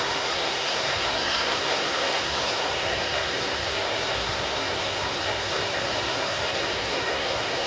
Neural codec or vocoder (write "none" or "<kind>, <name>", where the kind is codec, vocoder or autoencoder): codec, SNAC